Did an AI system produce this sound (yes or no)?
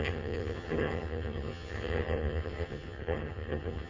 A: yes